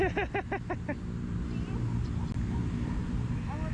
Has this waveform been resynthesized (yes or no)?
no